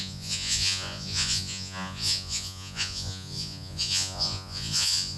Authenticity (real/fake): fake